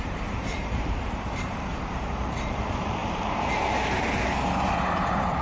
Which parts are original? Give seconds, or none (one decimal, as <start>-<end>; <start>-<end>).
3.0-5.0